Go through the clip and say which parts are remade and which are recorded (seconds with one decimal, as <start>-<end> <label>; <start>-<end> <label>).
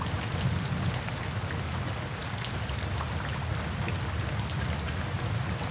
0.0-5.7 recorded